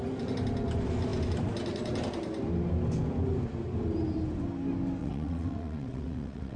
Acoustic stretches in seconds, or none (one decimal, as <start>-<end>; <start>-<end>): 0.0-5.0

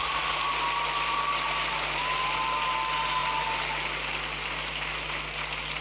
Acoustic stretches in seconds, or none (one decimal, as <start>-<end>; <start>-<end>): 0.0-5.8

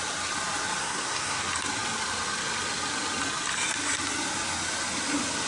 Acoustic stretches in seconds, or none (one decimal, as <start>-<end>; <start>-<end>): 0.0-0.8; 1.4-5.5

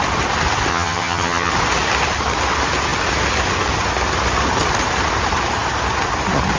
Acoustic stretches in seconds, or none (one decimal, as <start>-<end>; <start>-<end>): 0.0-0.7; 1.5-6.6

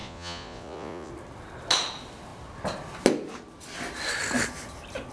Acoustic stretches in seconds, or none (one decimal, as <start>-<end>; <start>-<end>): 1.1-5.1

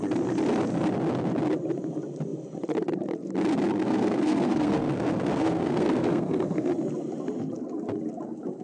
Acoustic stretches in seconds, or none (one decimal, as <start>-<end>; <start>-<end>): 0.0-3.8; 6.7-8.6

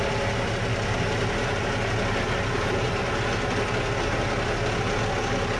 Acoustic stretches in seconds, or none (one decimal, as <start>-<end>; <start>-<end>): 0.0-5.6

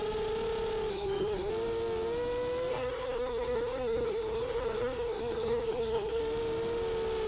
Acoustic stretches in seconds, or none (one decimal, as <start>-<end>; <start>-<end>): 0.0-0.9; 1.5-2.7; 6.2-7.3